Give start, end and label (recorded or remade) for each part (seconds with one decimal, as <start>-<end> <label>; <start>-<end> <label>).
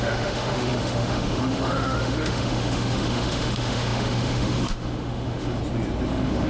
0.0-5.6 remade; 5.6-6.1 recorded; 6.1-6.5 remade